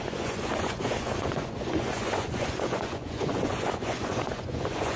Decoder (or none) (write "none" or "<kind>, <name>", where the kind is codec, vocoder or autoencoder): vocoder, Vocos